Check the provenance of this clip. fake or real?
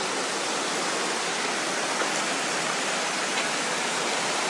real